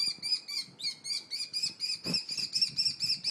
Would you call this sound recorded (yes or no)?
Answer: yes